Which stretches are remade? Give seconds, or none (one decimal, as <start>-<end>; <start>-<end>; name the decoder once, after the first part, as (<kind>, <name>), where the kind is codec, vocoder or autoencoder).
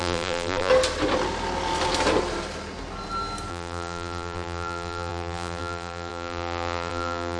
0.0-0.7 (vocoder, BigVGAN v2); 3.5-7.4